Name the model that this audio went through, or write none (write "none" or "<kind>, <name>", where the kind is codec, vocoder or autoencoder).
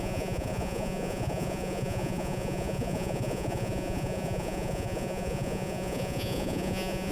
vocoder, Vocos